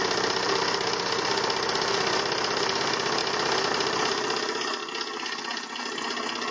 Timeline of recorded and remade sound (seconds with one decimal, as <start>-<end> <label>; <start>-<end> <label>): 0.0-6.5 recorded